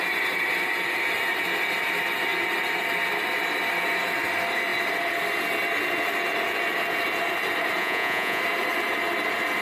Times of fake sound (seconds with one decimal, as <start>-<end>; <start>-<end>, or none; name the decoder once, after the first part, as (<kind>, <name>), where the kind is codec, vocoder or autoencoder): 7.8-8.4 (vocoder, Vocos)